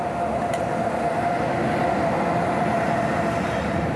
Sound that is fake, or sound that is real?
real